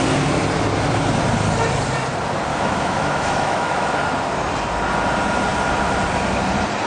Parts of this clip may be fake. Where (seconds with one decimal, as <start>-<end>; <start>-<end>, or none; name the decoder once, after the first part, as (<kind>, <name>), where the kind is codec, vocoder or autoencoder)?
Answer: 2.5-4.0 (autoencoder, DAC-VAE)

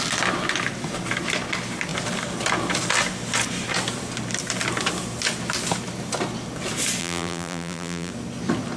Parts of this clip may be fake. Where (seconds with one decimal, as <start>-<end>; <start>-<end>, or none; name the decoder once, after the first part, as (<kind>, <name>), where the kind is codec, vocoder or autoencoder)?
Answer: 7.0-8.1 (vocoder, BigVGAN v2)

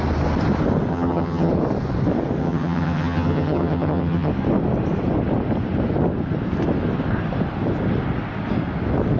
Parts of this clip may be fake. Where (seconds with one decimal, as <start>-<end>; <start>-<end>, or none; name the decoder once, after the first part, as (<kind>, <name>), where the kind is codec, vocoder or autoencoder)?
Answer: 0.9-1.5 (vocoder, HiFi-GAN); 2.4-4.3

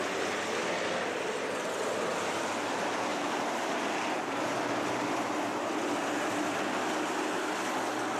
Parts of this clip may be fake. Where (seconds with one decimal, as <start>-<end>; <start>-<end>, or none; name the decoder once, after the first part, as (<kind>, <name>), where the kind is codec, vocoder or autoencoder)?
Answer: 3.1-4.9 (vocoder, BigVGAN v2)

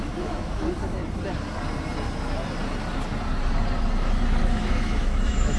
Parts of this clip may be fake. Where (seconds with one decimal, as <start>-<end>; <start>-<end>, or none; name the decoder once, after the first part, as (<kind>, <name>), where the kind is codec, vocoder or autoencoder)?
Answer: 0.0-1.0 (autoencoder, DAC-VAE); 4.4-5.6

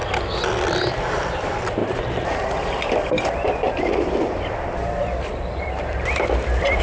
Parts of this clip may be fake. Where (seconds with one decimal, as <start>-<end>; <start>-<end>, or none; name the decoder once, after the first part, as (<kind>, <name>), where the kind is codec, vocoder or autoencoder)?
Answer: 1.1-6.8 (vocoder, BigVGAN v2)